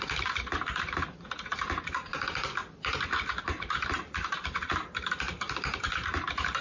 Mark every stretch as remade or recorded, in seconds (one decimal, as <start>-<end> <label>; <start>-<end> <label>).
0.0-6.6 remade